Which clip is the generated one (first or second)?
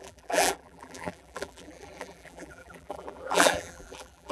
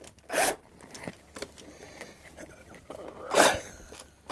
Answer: first